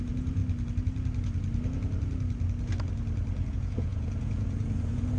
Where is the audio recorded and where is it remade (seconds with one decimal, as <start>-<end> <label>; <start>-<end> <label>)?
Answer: 0.0-0.4 remade; 0.4-3.5 recorded; 3.5-5.2 remade